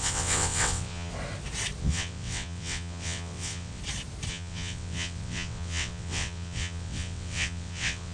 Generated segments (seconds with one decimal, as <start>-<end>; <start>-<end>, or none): 0.0-1.1; 1.8-3.8; 4.3-8.1